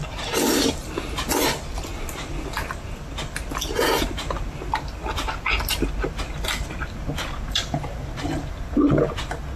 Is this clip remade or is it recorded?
recorded